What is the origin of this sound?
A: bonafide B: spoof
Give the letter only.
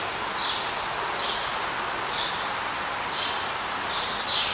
A